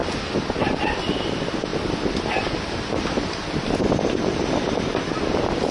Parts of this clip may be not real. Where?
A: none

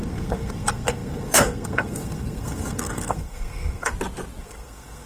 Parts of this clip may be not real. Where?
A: 0.0-3.9 (codec, SNAC); 4.4-5.1

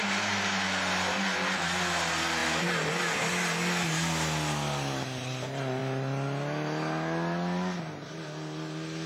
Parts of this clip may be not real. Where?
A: none

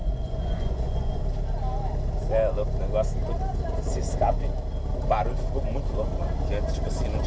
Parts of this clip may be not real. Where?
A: 0.0-1.2 (vocoder, Vocos)